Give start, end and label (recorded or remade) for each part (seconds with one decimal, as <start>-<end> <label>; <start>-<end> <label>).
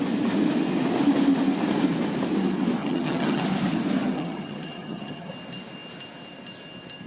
0.0-2.8 recorded; 2.8-3.4 remade; 3.4-4.0 recorded; 4.0-5.3 remade; 5.3-7.1 recorded